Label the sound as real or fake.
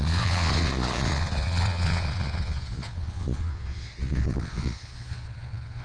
fake